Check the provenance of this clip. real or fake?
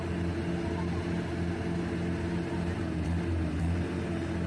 real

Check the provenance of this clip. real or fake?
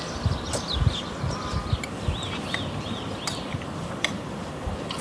real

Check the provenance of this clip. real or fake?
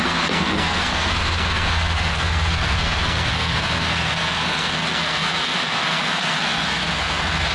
fake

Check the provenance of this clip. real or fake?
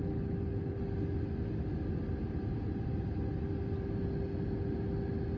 real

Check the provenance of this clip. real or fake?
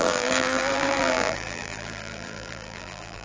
fake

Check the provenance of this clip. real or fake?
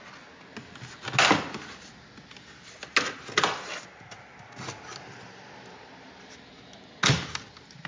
real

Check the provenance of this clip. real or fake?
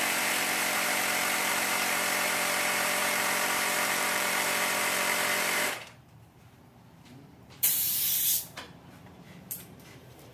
fake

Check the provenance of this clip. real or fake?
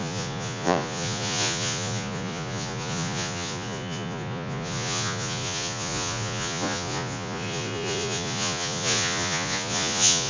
fake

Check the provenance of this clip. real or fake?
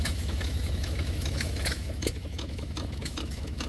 fake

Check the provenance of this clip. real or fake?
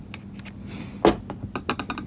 real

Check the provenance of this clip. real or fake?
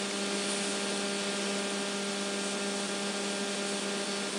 real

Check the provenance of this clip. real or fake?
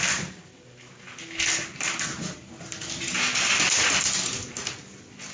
real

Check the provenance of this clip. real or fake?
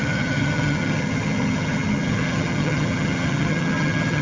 fake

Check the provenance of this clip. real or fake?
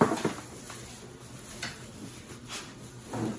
real